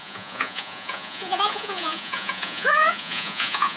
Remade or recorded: remade